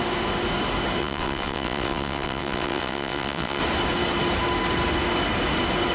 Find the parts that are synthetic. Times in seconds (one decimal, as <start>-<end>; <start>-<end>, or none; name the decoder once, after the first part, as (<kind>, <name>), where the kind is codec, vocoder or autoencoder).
1.0-3.6 (vocoder, WaveNeXt)